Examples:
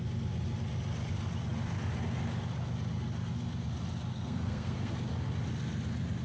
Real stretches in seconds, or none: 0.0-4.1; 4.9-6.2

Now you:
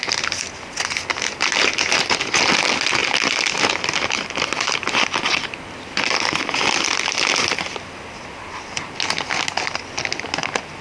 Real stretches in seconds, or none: 0.0-10.8